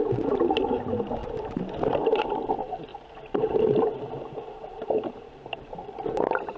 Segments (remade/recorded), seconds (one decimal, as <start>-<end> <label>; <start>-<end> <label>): 0.0-1.2 recorded; 1.2-2.4 remade; 2.4-2.9 recorded; 2.9-6.6 remade